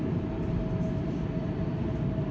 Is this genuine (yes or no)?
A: yes